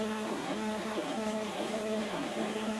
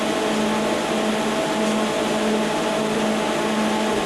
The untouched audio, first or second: second